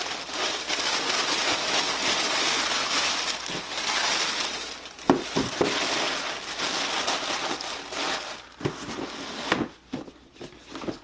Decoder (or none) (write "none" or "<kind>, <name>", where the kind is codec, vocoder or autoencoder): none